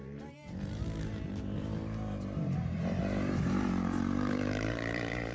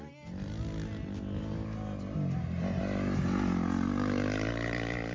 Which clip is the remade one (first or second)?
first